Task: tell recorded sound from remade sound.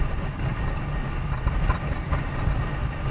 recorded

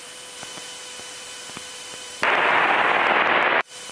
remade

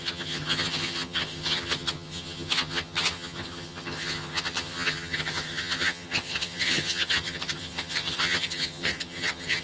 remade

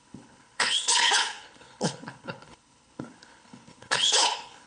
remade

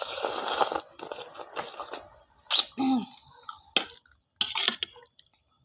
recorded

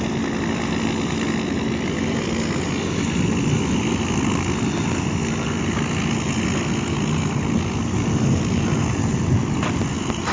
recorded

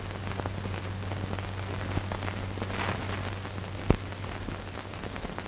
recorded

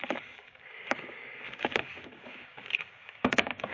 remade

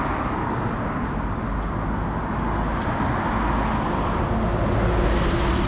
recorded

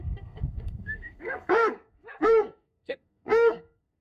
remade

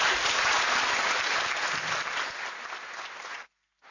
recorded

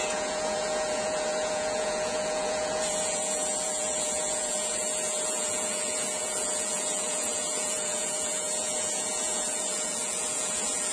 remade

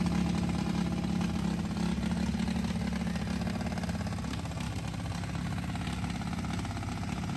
recorded